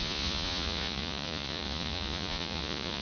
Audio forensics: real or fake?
fake